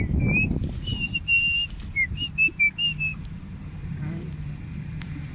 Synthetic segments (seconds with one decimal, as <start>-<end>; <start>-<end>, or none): 3.1-5.3